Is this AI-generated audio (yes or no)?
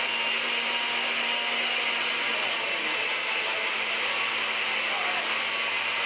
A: no